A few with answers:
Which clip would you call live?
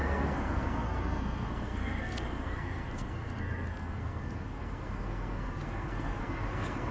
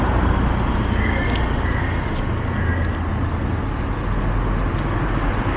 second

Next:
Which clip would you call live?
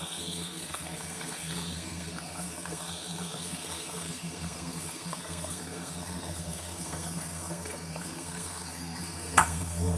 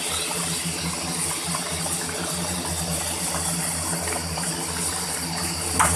second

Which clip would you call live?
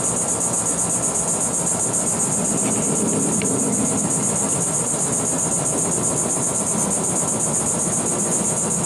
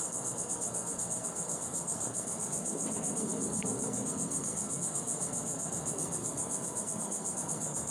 first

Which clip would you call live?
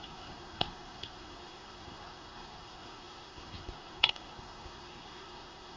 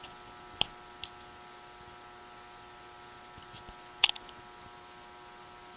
second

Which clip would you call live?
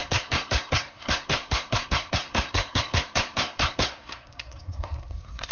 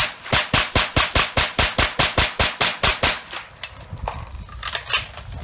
second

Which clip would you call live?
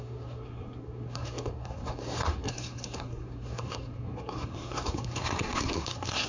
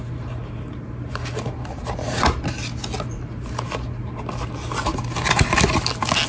second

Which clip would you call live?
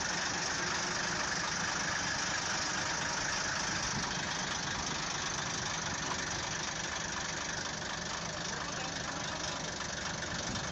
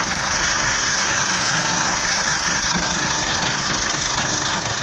first